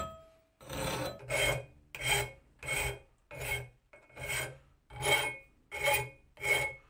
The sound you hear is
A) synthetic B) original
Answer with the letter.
B